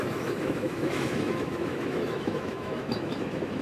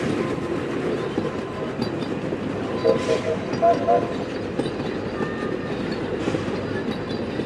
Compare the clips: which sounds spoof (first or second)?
first